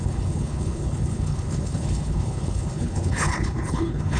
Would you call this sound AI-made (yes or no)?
yes